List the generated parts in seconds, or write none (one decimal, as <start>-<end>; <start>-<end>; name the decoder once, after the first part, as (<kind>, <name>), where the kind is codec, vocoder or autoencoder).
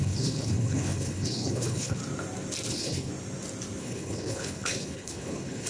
0.0-2.0 (codec, HILCodec); 2.7-3.1; 3.8-5.7